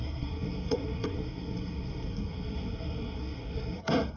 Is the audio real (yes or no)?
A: no